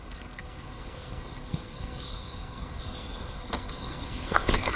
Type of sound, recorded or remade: remade